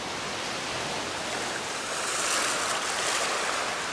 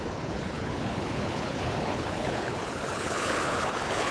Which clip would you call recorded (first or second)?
first